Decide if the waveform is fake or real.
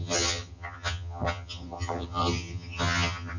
fake